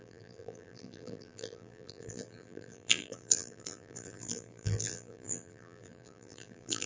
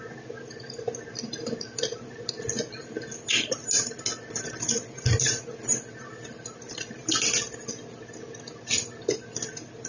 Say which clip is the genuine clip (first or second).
second